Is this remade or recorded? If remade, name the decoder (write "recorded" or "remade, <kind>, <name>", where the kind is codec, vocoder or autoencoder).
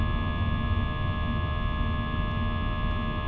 recorded